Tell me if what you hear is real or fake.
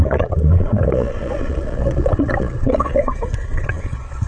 fake